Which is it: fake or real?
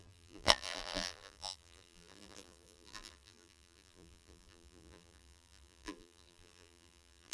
fake